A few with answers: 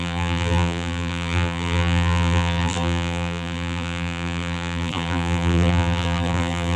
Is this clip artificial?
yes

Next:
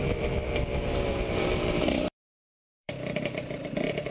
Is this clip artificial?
yes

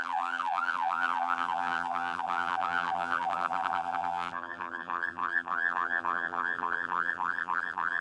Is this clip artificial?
yes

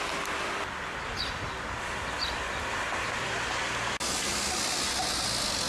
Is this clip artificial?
no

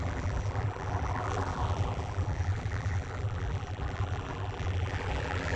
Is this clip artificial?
yes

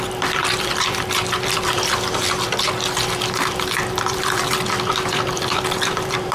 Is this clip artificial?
yes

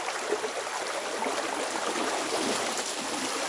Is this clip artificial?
no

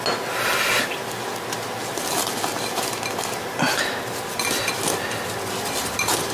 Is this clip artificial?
no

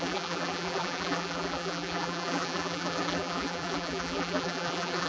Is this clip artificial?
yes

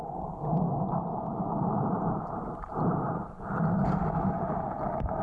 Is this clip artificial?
yes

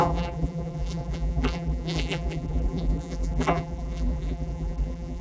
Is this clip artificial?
yes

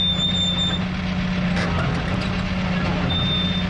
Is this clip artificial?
no